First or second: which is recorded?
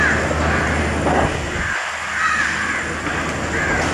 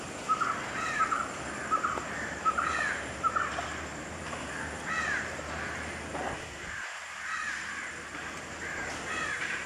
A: first